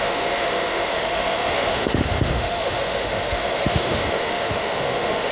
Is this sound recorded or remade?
remade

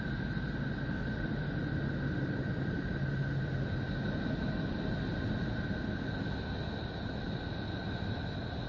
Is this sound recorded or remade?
recorded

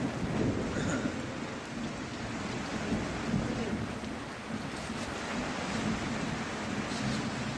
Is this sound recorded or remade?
recorded